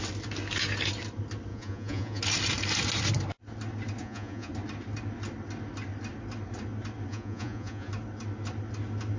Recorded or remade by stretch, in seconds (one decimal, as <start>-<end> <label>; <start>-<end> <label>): 0.0-1.5 recorded; 1.5-2.2 remade; 2.2-4.0 recorded; 4.0-4.5 remade; 4.5-7.1 recorded; 7.1-7.9 remade; 7.9-9.2 recorded